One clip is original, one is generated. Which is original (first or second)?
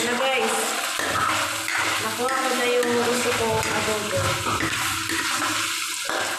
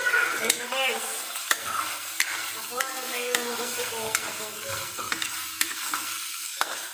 first